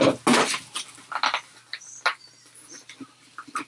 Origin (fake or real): real